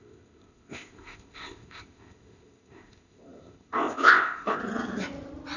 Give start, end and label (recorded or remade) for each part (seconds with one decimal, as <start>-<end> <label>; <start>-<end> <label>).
0.0-4.6 remade; 4.6-5.6 recorded